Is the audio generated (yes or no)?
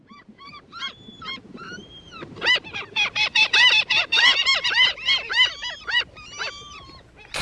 yes